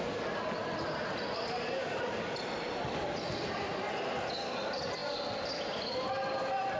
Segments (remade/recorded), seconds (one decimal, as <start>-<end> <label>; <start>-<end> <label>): 0.0-6.8 recorded